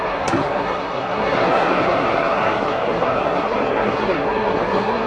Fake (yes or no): yes